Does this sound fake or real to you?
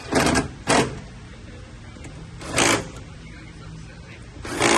real